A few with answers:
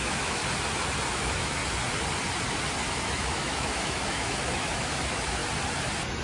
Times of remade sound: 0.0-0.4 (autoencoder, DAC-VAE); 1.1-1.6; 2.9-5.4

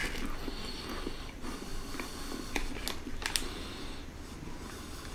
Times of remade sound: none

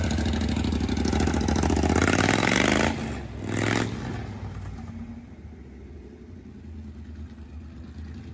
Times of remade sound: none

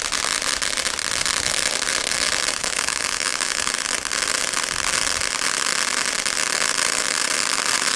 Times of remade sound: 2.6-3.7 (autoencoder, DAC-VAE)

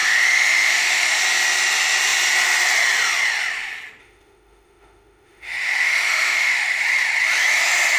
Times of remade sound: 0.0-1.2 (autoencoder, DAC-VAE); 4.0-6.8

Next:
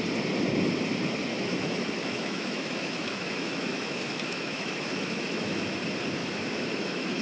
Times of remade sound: 1.3-5.6 (autoencoder, DAC-VAE); 6.2-7.2

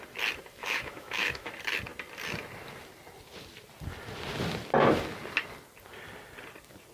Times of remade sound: 0.6-1.5 (autoencoder, DAC-VAE)

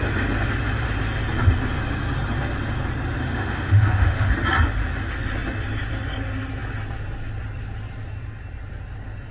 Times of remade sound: 3.2-4.3 (autoencoder, DAC-VAE)